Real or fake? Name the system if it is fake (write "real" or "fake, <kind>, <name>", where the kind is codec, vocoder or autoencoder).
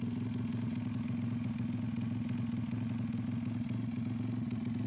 real